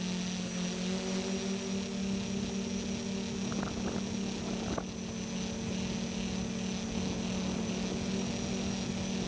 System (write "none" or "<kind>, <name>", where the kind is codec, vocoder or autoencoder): none